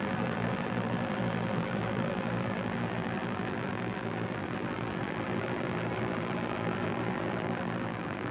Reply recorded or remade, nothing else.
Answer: remade